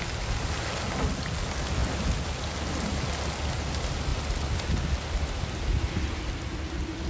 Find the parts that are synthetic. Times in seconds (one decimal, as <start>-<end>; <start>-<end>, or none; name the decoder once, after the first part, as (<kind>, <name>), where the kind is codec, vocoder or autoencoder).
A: none